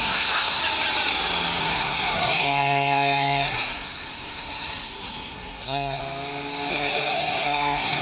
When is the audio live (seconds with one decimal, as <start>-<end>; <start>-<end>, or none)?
0.6-1.6; 6.0-6.7